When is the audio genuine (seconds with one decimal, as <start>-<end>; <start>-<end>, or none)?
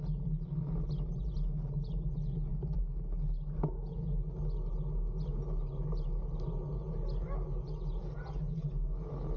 0.0-9.4